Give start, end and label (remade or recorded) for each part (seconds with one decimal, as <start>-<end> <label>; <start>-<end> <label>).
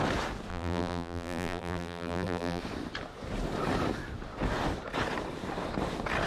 0.0-0.5 recorded; 0.5-2.6 remade; 2.6-6.3 recorded